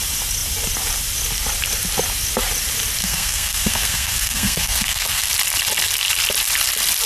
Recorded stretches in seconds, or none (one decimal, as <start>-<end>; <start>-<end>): 0.0-3.0; 5.3-7.1